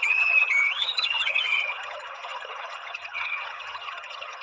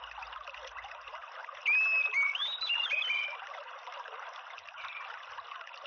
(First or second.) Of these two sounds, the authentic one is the second